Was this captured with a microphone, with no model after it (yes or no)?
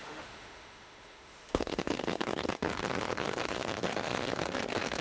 no